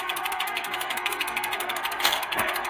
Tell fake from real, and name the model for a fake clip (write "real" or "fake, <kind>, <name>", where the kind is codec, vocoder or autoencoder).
fake, codec, SNAC